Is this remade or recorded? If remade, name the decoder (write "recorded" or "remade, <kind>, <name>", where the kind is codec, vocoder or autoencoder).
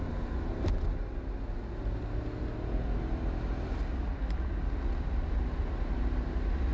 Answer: recorded